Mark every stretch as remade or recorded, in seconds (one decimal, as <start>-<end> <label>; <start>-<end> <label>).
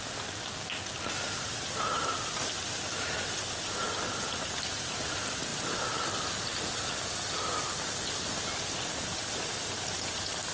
0.0-10.5 recorded